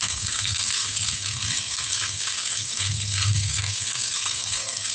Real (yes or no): no